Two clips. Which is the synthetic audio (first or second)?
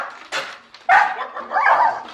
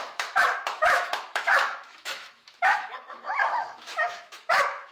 second